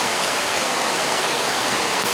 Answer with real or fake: fake